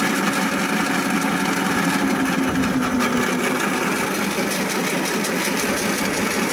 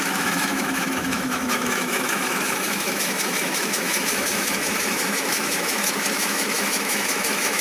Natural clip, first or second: first